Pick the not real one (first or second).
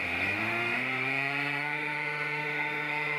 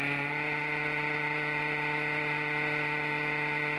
first